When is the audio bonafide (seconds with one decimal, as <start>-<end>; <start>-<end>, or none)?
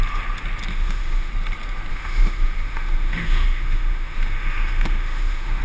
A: 0.0-0.7; 1.3-1.9